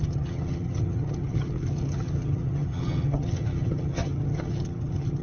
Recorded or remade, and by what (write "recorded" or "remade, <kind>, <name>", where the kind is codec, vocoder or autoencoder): remade, vocoder, HiFi-GAN